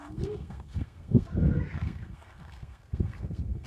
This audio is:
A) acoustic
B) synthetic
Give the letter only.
B